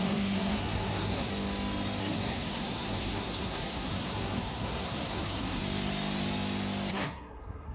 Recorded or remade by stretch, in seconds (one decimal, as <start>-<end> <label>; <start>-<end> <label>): 0.0-1.3 remade; 1.3-2.0 recorded; 2.0-5.6 remade; 5.6-6.9 recorded; 6.9-7.7 remade